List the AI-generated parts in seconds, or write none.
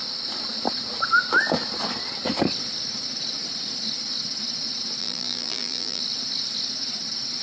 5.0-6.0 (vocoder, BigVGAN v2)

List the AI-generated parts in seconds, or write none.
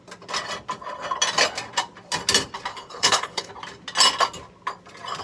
2.7-3.5 (codec, HILCodec)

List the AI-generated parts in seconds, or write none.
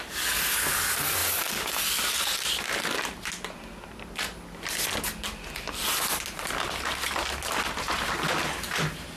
none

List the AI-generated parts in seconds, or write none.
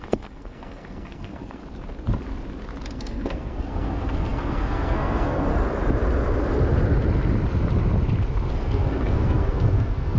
0.0-1.6 (codec, SNAC); 2.9-5.5; 8.5-10.2